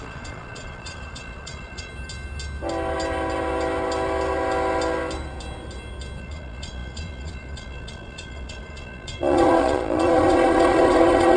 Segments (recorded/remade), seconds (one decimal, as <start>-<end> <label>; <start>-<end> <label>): 0.0-1.9 remade; 1.9-6.2 recorded; 6.2-11.4 remade